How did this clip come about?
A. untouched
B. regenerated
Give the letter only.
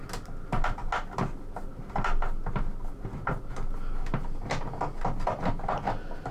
A